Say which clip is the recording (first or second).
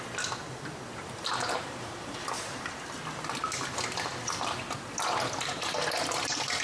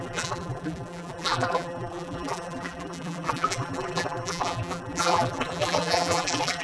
first